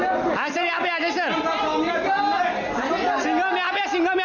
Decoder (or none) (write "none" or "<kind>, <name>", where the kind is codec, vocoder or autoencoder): none